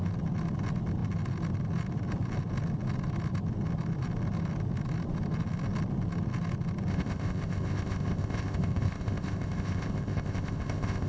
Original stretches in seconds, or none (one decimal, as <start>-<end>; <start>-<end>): 0.0-6.9